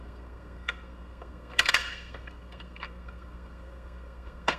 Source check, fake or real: fake